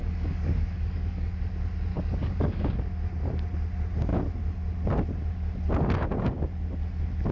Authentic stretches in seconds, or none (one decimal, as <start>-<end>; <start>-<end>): 1.3-1.9; 2.7-7.3

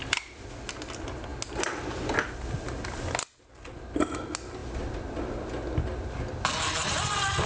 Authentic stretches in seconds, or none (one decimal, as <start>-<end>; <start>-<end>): 0.0-7.5

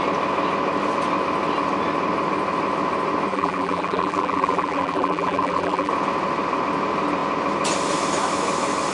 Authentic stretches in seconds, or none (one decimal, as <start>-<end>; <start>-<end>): 0.0-3.3; 5.9-8.9